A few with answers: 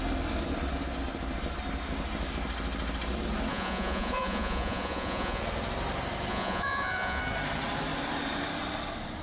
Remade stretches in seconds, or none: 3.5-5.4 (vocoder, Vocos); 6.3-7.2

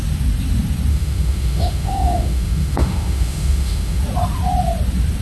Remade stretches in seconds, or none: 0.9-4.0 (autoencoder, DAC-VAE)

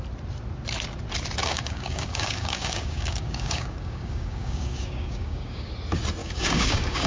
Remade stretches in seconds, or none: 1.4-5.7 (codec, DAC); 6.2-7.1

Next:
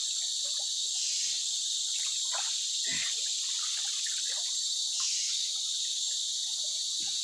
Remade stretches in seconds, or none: none

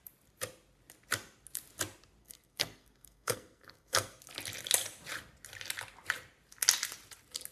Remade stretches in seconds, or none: 2.2-4.2 (codec, SNAC)